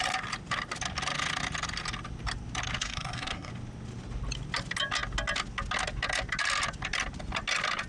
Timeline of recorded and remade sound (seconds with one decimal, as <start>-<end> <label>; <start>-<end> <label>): 0.0-2.8 recorded; 2.8-3.5 remade; 3.5-7.9 recorded